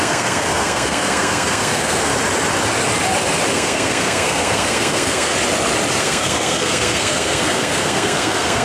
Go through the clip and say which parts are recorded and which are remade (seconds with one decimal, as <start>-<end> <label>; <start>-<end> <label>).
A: 0.0-2.1 remade; 2.1-3.5 recorded; 3.5-5.3 remade; 5.3-6.0 recorded; 6.0-8.6 remade